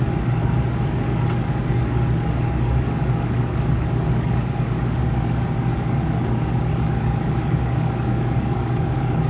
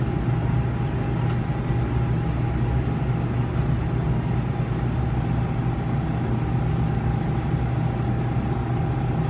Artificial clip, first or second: first